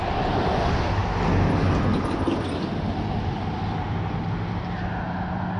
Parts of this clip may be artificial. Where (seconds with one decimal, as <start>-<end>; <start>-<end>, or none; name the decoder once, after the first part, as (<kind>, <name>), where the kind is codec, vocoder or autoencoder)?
none